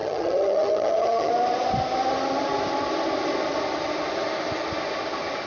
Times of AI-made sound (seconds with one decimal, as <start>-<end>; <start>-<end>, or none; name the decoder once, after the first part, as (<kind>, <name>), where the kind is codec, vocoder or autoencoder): 0.0-1.3 (vocoder, HiFi-GAN)